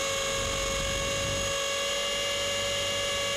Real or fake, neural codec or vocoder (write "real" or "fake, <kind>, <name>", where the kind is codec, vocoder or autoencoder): real